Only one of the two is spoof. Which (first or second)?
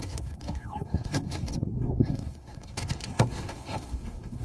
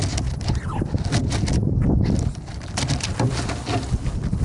first